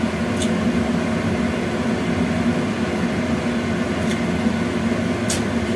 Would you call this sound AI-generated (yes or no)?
no